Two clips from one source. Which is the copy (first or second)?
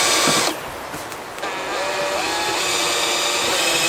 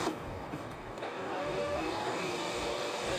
second